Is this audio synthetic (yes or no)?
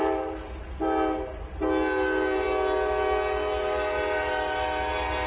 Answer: no